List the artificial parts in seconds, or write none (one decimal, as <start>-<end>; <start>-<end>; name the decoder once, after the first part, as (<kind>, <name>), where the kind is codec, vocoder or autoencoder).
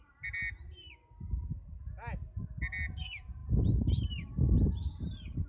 none